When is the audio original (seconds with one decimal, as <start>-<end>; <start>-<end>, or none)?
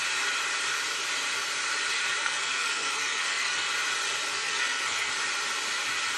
0.0-2.2; 3.7-4.3; 5.1-6.2